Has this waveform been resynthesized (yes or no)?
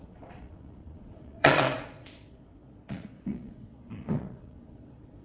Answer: yes